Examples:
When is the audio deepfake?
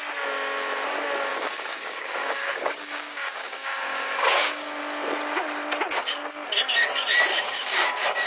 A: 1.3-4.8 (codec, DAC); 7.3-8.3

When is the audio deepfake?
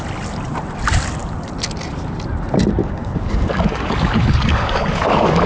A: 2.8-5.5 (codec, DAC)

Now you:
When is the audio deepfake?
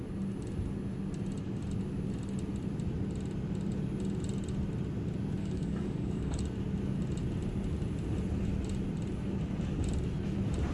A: 5.4-6.4 (codec, DAC)